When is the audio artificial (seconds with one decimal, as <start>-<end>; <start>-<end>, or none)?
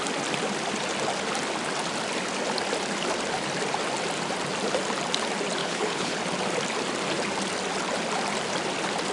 5.6-6.2